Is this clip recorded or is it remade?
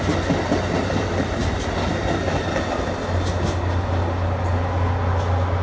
recorded